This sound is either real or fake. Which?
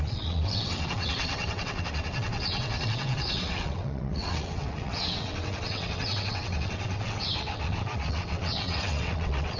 fake